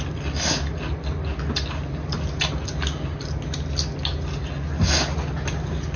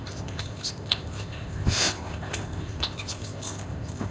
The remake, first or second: second